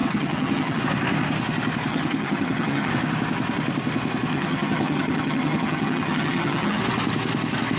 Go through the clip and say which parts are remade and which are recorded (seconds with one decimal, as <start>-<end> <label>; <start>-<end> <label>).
0.0-0.8 remade; 0.8-1.9 recorded; 1.9-2.9 remade; 2.9-4.3 recorded; 4.3-6.8 remade; 6.8-7.8 recorded